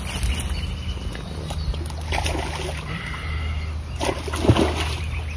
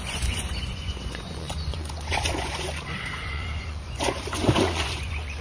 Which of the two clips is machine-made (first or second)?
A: second